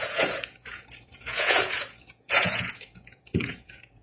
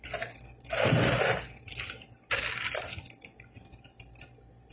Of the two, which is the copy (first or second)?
first